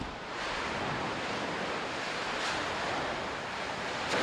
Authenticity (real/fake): real